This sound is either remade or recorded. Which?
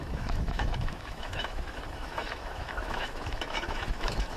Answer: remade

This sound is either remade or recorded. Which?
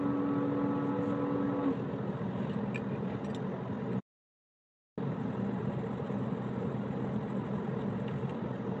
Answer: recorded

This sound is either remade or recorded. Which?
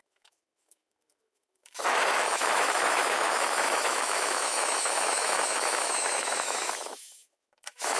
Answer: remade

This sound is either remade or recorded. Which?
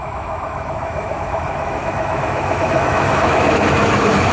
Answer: remade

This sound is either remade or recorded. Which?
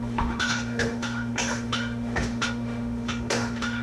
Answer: remade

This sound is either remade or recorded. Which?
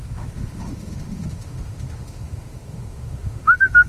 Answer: remade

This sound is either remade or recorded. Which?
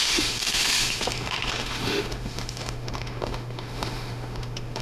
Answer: remade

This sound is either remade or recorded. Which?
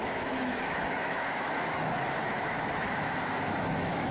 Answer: remade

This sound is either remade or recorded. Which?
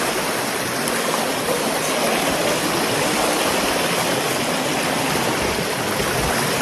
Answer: recorded